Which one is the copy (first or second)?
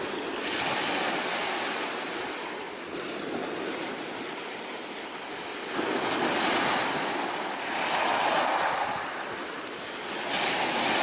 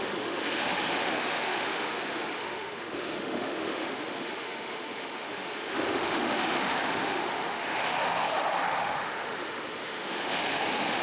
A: second